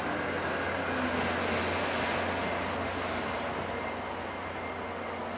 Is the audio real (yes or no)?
yes